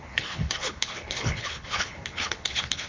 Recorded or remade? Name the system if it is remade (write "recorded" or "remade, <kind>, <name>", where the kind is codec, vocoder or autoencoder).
remade, codec, HILCodec